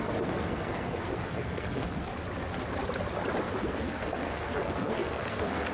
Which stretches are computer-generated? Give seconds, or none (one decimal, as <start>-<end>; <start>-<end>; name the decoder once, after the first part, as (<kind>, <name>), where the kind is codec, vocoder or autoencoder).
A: 0.0-2.1 (codec, SNAC); 3.4-5.7

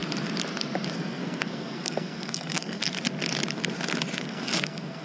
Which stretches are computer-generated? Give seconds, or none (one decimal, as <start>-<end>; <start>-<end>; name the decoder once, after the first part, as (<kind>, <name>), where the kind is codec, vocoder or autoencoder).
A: 0.9-2.8 (codec, SNAC); 4.2-5.0

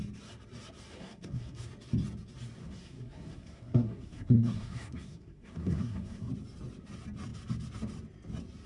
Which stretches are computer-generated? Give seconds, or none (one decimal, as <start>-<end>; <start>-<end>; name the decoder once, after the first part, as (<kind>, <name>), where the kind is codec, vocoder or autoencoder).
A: 0.9-1.7 (codec, SNAC); 2.6-6.3

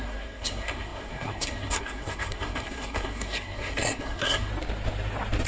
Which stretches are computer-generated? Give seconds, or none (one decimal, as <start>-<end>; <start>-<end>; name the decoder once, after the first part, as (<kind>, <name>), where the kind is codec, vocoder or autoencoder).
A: 0.0-4.5 (codec, SNAC)

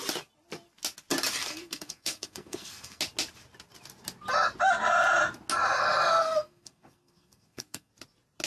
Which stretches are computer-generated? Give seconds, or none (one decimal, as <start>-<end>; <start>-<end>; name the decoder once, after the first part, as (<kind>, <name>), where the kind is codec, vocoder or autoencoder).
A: 1.4-3.0 (codec, SNAC); 6.2-7.9

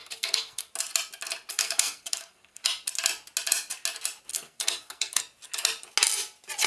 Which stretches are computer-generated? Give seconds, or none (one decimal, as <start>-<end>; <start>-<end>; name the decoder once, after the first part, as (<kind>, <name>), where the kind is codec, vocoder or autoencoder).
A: 0.0-0.7 (codec, SNAC); 1.5-2.6; 4.3-5.2

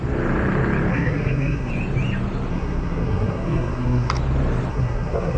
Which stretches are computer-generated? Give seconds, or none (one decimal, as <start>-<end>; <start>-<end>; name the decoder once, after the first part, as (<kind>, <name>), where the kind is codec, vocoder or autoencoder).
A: 0.9-1.7 (codec, SNAC); 2.5-4.1; 4.7-5.4